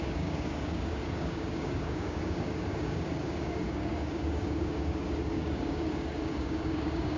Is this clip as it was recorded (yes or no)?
no